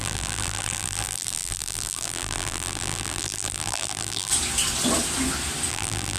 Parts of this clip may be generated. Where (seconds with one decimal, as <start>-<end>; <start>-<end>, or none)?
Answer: 0.0-4.3; 5.7-6.2